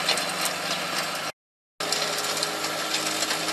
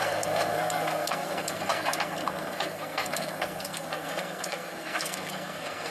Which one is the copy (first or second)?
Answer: second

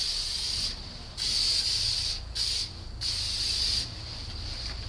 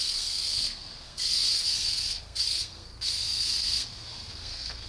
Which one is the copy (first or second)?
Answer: second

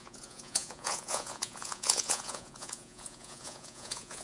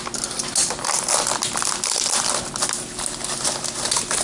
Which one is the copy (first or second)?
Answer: first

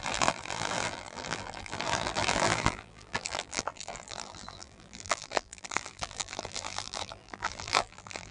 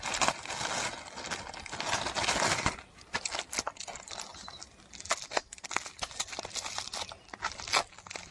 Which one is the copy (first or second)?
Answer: first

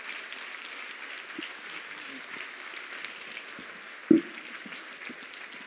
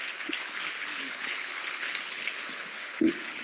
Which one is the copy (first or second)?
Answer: second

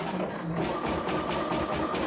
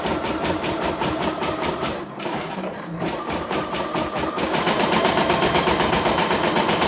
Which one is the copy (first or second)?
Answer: second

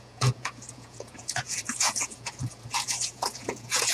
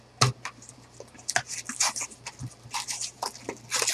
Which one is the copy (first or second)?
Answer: first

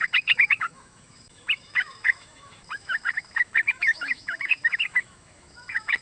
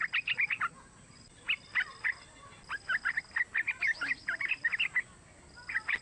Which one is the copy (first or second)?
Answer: first